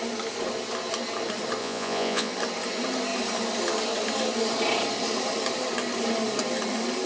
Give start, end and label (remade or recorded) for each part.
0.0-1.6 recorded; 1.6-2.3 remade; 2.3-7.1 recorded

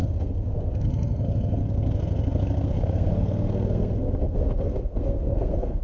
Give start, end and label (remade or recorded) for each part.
0.0-5.8 remade

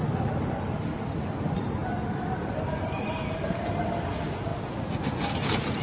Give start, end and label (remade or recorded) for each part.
0.0-5.8 recorded

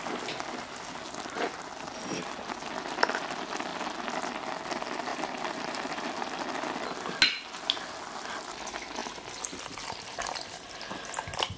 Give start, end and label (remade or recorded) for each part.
0.0-5.1 recorded; 5.1-6.4 remade; 6.4-11.6 recorded

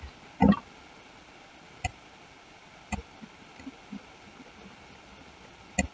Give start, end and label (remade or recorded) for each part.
0.0-5.9 recorded